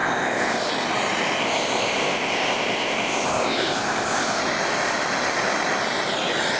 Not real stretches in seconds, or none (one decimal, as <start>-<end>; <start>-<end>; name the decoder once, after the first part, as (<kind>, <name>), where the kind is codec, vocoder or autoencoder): 0.0-0.7 (codec, ZipCodec); 1.4-4.4